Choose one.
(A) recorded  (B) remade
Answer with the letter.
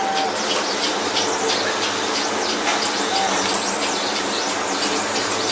A